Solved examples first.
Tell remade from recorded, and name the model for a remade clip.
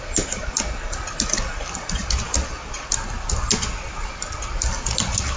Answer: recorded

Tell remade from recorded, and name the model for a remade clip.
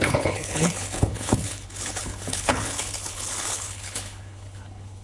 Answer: remade, codec, HILCodec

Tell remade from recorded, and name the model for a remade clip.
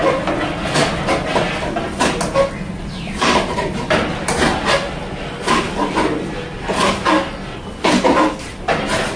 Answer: recorded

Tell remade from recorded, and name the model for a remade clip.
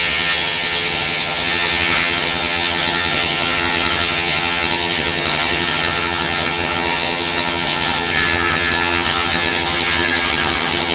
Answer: remade, vocoder, HiFi-GAN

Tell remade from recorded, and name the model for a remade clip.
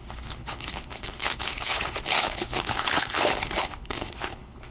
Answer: remade, codec, HILCodec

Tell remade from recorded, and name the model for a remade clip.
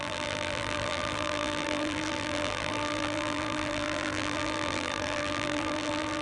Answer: remade, vocoder, BigVGAN v2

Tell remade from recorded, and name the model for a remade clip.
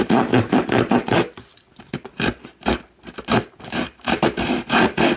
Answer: remade, vocoder, BigVGAN v2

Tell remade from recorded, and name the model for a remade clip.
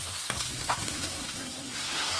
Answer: remade, codec, SNAC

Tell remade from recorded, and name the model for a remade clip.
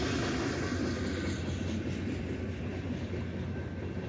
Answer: recorded